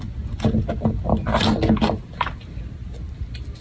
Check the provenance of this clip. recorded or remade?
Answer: recorded